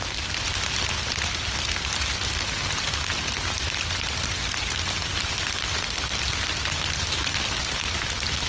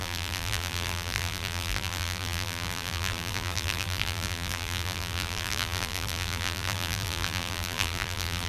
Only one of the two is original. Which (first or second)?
first